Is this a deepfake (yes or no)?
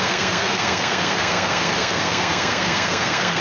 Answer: yes